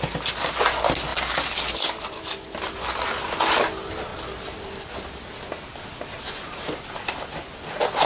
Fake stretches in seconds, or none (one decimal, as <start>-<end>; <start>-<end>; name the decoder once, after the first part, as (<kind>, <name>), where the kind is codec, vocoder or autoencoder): none